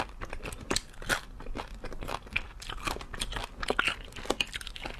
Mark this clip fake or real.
real